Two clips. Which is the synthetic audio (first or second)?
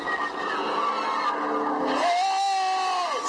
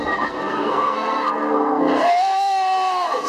second